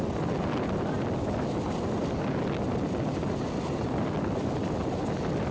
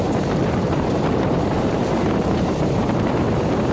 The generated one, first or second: second